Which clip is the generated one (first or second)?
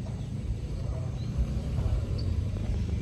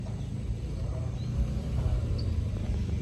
first